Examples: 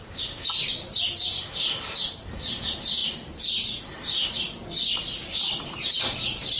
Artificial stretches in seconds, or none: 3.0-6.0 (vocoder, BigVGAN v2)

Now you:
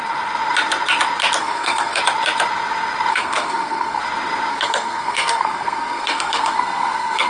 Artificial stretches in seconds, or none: 1.4-2.0 (codec, SNAC); 3.1-4.0; 4.5-7.3

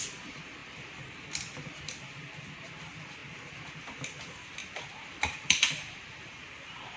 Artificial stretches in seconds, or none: 4.6-7.0 (vocoder, BigVGAN v2)

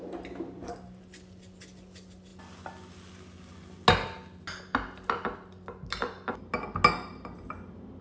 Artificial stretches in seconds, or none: none

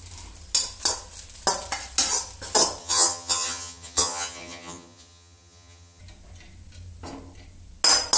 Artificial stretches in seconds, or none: 2.8-6.0 (vocoder, HiFi-GAN)

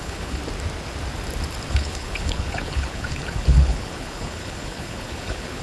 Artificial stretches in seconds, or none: 0.0-0.4 (codec, HILCodec); 1.7-5.6

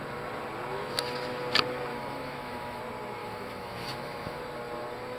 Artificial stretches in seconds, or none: 1.9-2.8 (autoencoder, DAC-VAE); 3.2-4.4

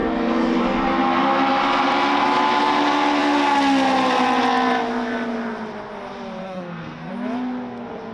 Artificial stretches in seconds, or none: 6.4-7.1 (codec, SNAC)